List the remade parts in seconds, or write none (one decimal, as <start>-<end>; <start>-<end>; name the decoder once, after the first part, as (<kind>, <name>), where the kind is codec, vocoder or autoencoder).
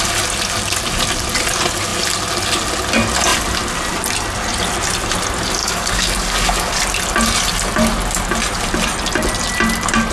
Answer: 5.6-6.8 (codec, DAC)